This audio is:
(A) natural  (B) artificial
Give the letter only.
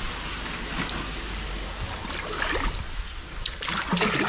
A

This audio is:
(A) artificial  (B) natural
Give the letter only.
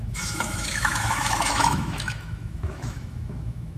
A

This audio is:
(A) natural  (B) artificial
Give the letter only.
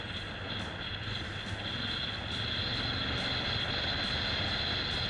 A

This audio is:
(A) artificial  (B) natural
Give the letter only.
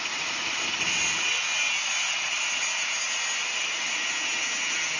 B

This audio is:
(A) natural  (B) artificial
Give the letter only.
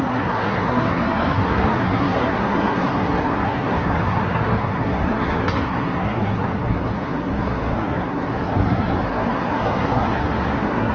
B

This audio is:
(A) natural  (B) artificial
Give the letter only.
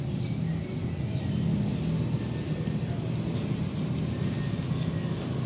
A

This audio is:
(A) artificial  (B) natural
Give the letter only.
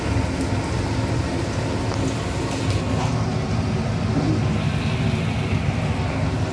B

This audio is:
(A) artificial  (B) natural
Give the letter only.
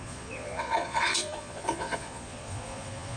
A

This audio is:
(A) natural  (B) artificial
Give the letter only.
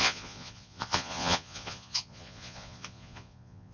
B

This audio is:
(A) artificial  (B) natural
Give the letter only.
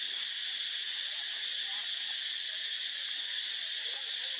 B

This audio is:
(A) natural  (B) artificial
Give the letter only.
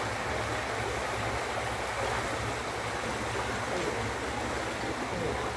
A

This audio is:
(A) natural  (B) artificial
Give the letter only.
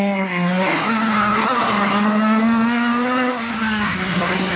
B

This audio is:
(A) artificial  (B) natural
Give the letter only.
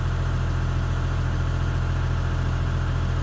B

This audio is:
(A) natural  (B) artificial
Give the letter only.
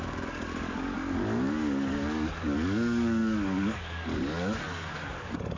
B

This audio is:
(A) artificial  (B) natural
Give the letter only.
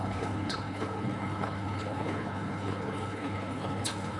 A